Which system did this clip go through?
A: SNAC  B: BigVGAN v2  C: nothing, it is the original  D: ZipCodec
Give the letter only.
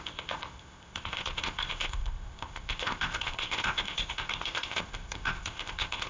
D